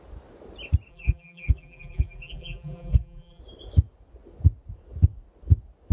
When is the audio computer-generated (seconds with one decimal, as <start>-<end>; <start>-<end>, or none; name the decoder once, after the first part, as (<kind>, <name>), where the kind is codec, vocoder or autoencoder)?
0.9-3.4 (vocoder, BigVGAN v2)